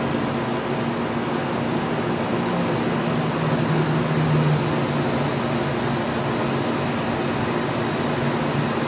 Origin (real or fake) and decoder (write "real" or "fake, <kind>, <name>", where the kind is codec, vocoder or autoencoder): real